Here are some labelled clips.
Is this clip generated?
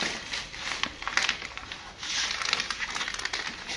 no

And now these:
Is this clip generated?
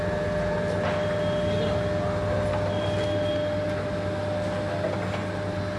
no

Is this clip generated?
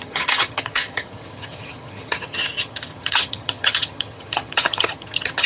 yes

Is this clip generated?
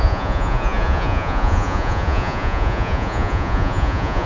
yes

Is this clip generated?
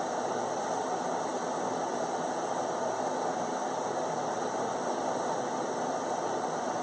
yes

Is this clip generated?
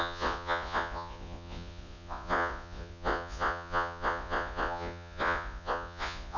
yes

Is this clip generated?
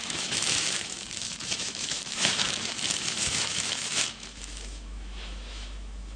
yes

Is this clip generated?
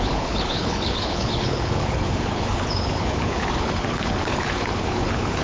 yes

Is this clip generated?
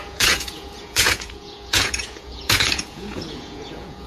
yes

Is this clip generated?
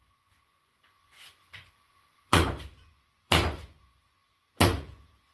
yes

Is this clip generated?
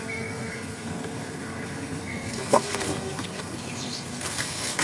yes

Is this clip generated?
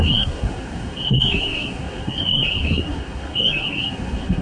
yes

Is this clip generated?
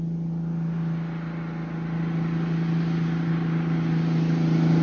no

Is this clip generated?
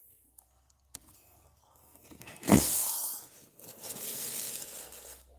yes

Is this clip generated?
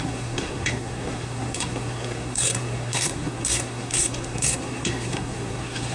yes